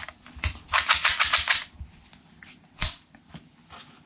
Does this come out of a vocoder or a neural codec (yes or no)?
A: no